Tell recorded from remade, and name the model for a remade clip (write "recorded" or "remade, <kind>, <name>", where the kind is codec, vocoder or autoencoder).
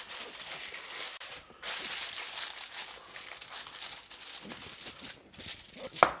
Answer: recorded